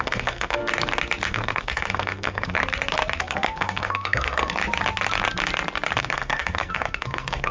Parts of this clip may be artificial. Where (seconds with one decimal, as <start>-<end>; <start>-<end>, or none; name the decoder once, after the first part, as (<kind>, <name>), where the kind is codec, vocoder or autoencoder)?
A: 0.0-0.6 (codec, SNAC); 1.3-2.6; 3.2-4.6; 6.0-7.5